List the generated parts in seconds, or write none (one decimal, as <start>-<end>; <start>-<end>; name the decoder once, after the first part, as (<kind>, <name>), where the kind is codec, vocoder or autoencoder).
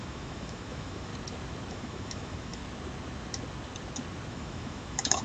0.0-1.1 (autoencoder, DAC-VAE); 1.7-2.6; 4.3-5.2